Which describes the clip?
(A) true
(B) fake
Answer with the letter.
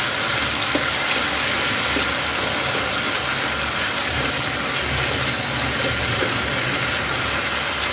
A